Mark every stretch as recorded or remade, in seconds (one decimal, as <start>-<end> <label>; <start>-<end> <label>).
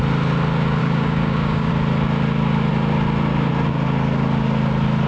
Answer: 0.0-0.8 recorded; 0.8-1.7 remade; 1.7-5.1 recorded